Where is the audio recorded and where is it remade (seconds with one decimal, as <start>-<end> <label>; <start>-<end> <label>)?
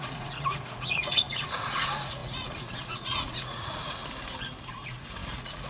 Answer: 0.0-4.0 remade; 4.0-4.7 recorded; 4.7-5.7 remade